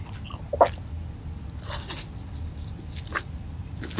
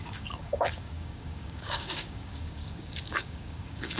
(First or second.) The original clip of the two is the first